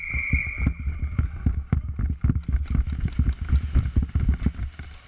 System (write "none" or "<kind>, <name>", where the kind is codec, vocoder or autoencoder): none